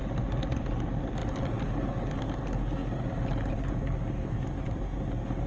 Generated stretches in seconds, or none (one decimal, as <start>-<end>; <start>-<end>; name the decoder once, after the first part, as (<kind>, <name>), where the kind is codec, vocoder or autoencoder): none